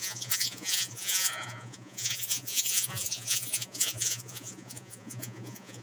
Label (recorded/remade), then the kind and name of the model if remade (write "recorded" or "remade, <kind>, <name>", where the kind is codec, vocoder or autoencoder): remade, vocoder, Vocos